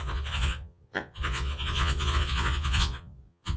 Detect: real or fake fake